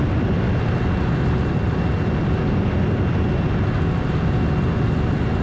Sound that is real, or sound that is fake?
real